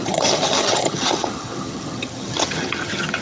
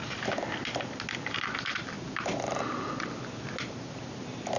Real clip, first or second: second